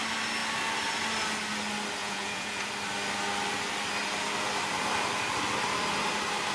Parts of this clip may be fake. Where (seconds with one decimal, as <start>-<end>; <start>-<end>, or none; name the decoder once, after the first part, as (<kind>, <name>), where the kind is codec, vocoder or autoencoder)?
2.0-2.7 (vocoder, Vocos)